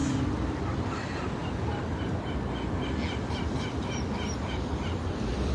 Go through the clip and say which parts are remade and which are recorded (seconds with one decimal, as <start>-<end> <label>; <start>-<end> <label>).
0.0-0.7 recorded; 0.7-1.4 remade; 1.4-4.7 recorded; 4.7-5.5 remade